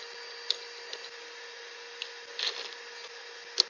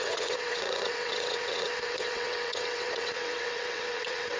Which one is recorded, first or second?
first